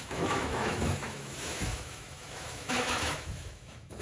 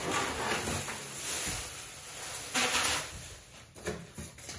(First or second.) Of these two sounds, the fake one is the first